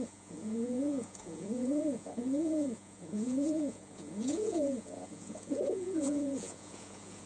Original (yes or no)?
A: no